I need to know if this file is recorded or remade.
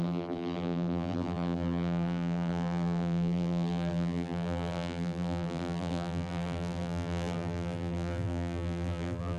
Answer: remade